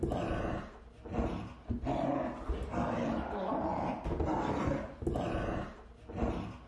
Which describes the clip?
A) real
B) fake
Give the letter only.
A